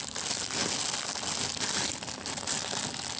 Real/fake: real